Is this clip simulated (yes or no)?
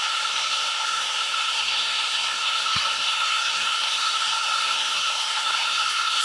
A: yes